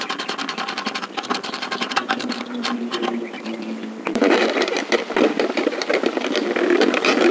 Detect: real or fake fake